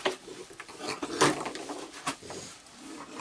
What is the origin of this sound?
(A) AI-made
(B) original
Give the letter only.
B